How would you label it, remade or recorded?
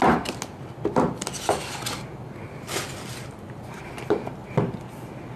recorded